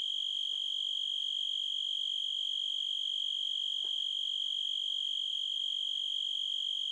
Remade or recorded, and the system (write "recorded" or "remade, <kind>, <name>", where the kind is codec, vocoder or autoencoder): recorded